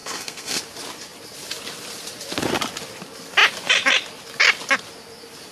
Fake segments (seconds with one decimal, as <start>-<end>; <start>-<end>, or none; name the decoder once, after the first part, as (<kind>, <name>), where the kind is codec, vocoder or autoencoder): 0.0-0.6 (codec, SNAC)